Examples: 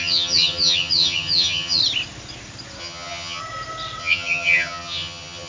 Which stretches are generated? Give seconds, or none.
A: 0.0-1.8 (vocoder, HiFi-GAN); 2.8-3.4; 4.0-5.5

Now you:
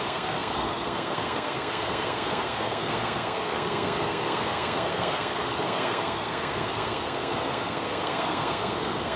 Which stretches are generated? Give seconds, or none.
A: 0.0-9.2 (codec, SNAC)